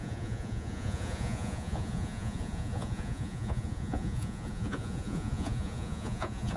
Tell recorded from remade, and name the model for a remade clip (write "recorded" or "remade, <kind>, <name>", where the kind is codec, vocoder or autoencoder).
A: remade, vocoder, Vocos